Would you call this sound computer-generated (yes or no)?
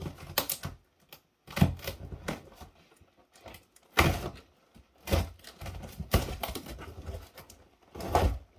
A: no